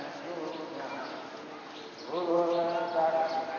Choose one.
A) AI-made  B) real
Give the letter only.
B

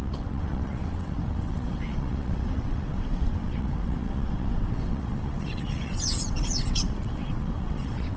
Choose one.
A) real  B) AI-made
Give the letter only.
B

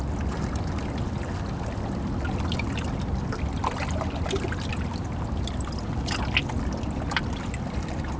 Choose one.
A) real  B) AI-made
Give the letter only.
A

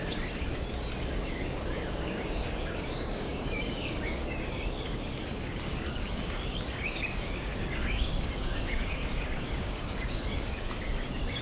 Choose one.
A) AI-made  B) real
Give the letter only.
A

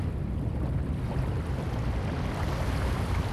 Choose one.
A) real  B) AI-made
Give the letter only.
A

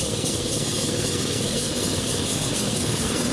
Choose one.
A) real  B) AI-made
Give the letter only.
B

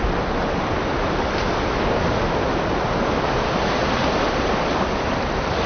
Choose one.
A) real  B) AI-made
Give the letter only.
A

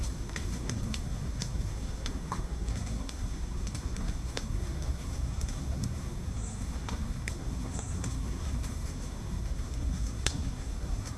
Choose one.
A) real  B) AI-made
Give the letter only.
B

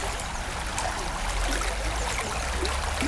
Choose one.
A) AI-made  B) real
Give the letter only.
B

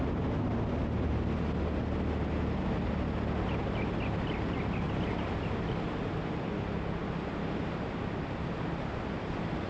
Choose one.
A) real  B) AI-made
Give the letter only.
A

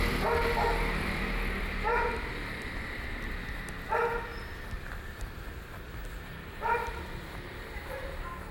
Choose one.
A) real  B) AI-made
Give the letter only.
A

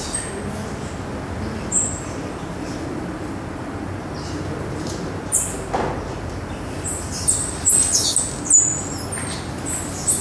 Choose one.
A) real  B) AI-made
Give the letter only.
A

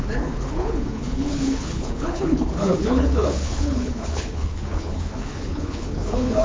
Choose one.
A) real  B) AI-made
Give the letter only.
B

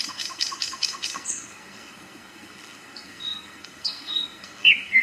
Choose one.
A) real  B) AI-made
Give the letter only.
B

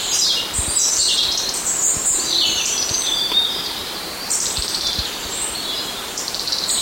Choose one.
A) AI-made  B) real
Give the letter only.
A